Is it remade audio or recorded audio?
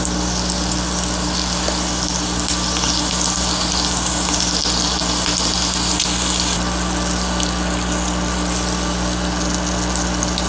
recorded